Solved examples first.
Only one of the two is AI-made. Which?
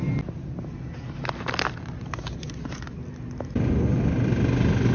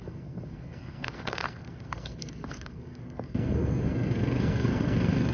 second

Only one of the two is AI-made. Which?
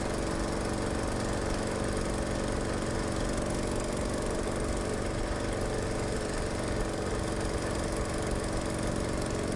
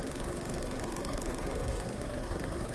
second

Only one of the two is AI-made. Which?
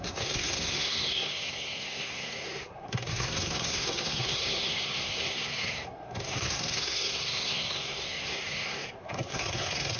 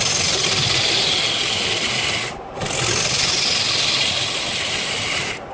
first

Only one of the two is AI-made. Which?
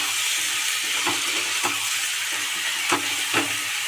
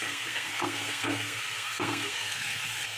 second